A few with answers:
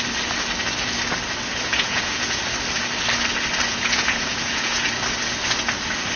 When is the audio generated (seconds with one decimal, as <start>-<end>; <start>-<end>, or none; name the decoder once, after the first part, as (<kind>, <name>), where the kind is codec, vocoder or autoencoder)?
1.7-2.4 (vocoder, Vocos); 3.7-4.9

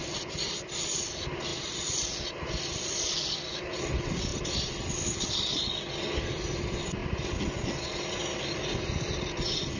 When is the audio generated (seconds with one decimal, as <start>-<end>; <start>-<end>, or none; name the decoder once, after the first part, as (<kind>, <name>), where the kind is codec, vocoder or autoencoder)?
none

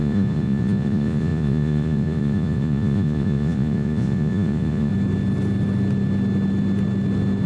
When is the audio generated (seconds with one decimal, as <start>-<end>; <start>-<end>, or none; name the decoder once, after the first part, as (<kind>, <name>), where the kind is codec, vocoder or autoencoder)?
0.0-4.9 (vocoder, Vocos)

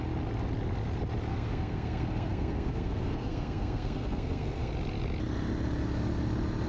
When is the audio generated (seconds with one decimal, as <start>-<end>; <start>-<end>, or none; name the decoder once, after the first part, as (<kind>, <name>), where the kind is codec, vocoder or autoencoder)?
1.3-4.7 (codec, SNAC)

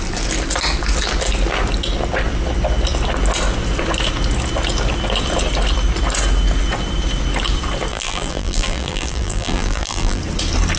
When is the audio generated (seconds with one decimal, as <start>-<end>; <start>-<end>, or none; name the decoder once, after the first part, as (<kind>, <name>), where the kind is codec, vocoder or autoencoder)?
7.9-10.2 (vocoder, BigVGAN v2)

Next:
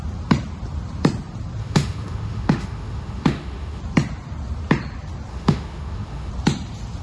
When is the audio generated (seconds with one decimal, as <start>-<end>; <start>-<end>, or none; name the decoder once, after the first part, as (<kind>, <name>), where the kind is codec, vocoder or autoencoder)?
1.6-3.8 (autoencoder, DAC-VAE); 5.3-6.3